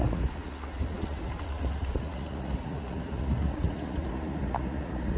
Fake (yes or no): yes